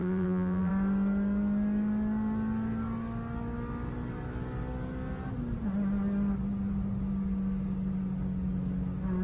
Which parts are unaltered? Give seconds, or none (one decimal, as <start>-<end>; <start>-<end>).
0.7-9.2